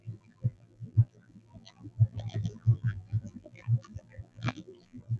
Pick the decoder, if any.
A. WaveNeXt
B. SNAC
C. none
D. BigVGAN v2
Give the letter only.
D